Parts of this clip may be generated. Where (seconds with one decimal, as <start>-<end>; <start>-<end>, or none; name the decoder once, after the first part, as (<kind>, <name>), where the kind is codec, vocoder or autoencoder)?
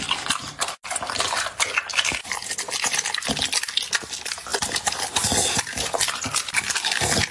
none